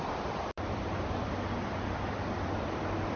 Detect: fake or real fake